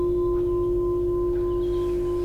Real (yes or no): yes